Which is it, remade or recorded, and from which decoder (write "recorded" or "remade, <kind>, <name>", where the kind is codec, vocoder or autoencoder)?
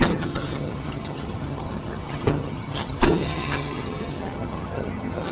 remade, vocoder, HiFi-GAN